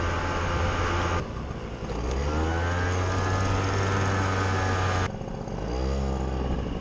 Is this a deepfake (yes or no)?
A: no